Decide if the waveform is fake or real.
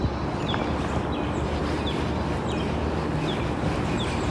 real